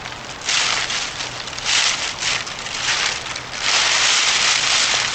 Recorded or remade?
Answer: recorded